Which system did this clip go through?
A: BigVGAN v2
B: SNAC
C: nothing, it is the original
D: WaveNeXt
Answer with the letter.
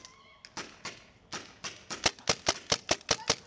C